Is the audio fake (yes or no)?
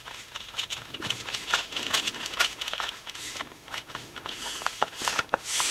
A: yes